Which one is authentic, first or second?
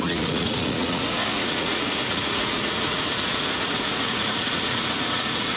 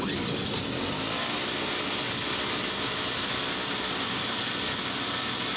second